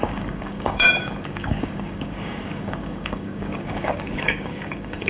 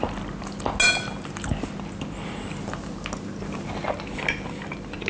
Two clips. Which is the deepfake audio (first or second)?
first